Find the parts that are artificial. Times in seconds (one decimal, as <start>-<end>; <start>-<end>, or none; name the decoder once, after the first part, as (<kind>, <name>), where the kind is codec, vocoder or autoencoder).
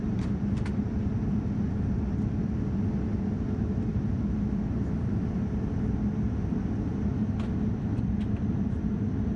0.0-7.1 (vocoder, BigVGAN v2)